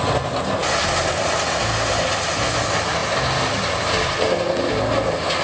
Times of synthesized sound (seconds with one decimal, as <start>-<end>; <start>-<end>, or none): none